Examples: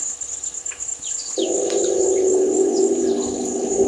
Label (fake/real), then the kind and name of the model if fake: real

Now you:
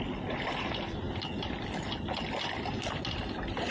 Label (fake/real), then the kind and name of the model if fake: real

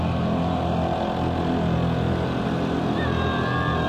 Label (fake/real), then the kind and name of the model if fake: real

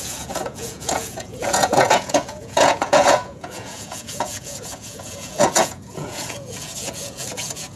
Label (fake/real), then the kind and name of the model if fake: fake, vocoder, Vocos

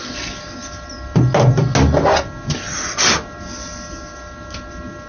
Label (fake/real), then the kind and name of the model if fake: real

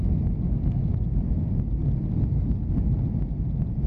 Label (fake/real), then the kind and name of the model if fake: real